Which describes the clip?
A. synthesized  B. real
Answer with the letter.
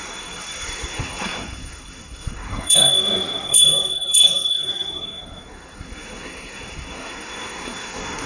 A